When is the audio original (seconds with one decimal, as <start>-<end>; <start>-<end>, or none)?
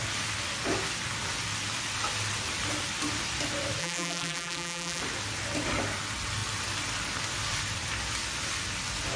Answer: 0.0-3.8; 5.0-9.2